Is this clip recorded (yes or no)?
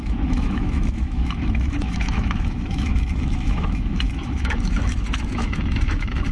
no